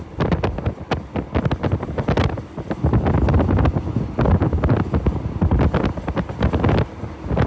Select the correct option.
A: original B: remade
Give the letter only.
A